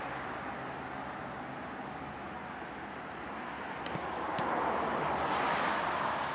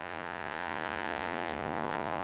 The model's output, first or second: second